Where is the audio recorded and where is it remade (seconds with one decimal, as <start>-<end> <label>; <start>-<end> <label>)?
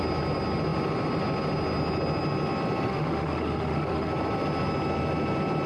0.0-2.9 recorded; 2.9-4.1 remade; 4.1-5.7 recorded